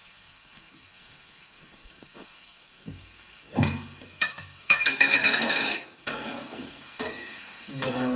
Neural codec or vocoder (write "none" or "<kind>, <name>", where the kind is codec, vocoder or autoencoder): codec, SNAC